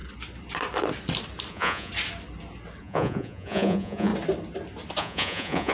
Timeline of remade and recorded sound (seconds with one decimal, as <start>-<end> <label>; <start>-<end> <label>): 0.0-1.5 recorded; 1.5-1.9 remade; 1.9-2.8 recorded; 2.8-4.1 remade; 4.1-5.0 recorded; 5.0-5.7 remade